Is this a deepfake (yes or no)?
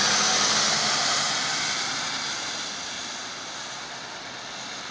no